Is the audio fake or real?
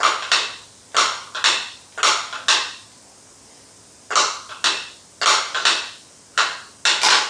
real